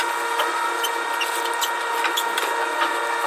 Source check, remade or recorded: recorded